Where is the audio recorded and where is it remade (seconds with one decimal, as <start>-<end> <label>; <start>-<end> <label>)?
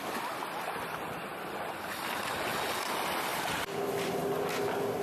0.0-5.0 recorded